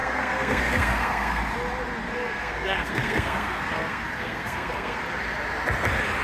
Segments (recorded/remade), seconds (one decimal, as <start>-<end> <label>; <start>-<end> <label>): 0.0-1.4 remade; 1.4-2.0 recorded; 2.0-5.0 remade; 5.0-6.2 recorded